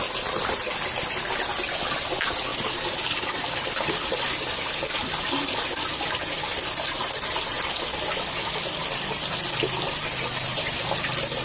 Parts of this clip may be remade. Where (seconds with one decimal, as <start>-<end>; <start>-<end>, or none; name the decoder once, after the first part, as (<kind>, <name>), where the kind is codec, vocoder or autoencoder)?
none